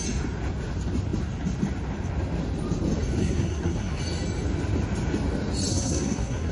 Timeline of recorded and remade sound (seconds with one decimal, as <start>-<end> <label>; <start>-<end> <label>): 0.0-3.2 recorded; 3.2-4.0 remade; 4.0-5.7 recorded; 5.7-6.5 remade